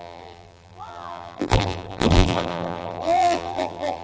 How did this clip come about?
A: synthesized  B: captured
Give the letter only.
A